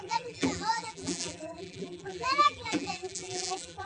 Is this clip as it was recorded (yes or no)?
no